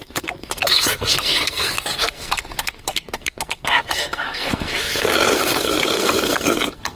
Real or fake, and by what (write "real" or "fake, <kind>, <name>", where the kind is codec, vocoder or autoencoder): fake, codec, SNAC